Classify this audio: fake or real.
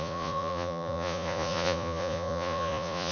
fake